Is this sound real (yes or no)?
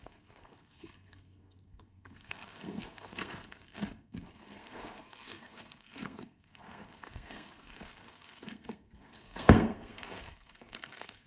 no